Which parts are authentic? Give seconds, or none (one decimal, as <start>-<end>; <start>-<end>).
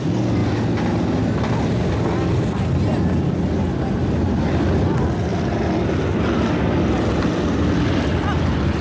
0.0-8.8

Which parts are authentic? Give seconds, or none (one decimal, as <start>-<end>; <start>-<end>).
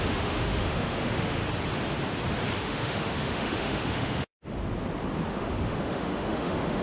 1.4-2.6; 4.6-5.3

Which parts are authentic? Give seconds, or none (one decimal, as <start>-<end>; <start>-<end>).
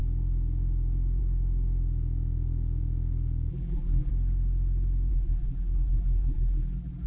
0.0-3.5; 4.1-5.1